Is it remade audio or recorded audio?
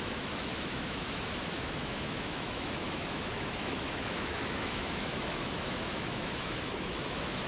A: remade